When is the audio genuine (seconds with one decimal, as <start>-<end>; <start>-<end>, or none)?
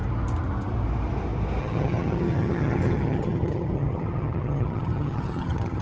0.0-1.6